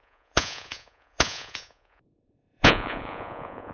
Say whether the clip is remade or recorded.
remade